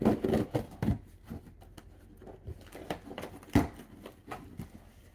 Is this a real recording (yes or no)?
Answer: yes